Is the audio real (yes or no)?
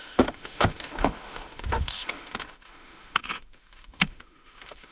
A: no